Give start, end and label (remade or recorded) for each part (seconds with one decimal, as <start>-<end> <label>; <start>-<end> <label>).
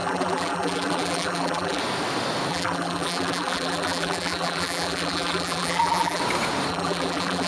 0.0-1.8 remade; 1.8-2.5 recorded; 2.5-6.2 remade; 6.2-6.7 recorded; 6.7-7.5 remade